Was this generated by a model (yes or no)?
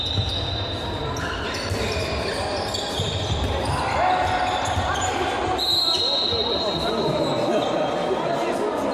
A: no